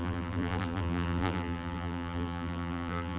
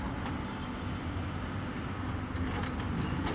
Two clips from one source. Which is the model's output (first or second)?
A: first